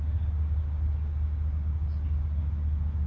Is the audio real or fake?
real